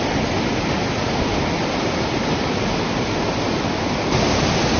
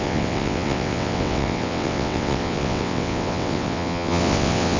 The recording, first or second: first